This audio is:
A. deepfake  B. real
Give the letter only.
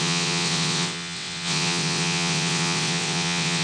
A